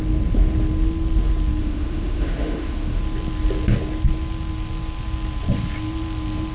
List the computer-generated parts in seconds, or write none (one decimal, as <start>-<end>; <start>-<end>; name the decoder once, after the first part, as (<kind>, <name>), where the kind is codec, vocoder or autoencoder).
1.6-3.0 (autoencoder, DAC-VAE)